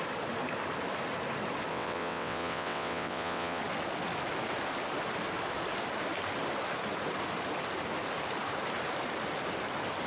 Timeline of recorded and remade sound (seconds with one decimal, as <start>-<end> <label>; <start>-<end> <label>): 0.0-1.7 recorded; 1.7-3.6 remade; 3.6-10.1 recorded